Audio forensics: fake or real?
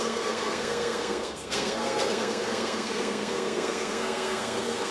fake